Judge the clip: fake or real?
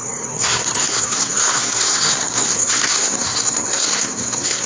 fake